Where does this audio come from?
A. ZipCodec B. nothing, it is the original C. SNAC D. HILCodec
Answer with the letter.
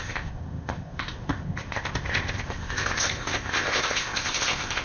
A